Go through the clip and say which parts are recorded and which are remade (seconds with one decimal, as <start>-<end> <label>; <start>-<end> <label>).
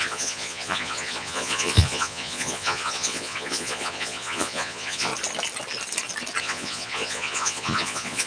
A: 0.0-5.1 remade; 5.1-6.4 recorded; 6.4-8.3 remade